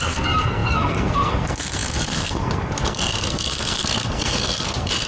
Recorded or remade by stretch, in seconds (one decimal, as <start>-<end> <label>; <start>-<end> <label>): 0.0-5.1 remade